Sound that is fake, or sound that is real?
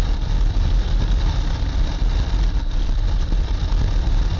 fake